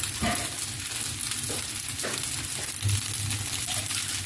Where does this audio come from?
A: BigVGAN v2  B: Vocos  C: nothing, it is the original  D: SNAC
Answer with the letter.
C